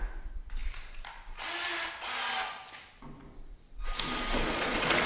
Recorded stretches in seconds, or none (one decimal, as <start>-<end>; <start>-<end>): 0.0-4.5